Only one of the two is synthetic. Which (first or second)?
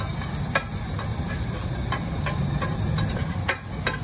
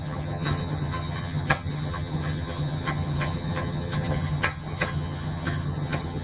second